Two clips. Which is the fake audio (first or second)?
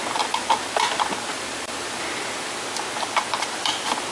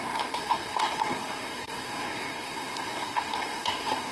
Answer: second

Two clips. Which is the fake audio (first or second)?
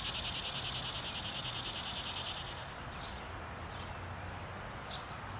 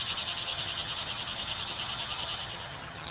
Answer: second